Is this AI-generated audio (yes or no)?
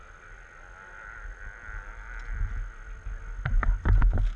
no